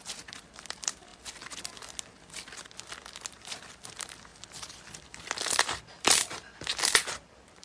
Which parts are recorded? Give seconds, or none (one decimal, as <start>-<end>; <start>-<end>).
1.1-3.7